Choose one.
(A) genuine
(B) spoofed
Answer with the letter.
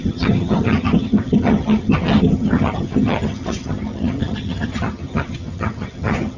B